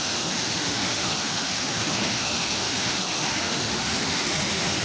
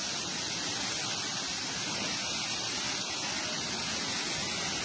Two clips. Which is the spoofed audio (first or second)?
first